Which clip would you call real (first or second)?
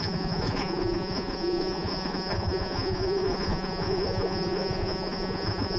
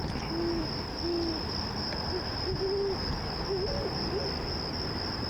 second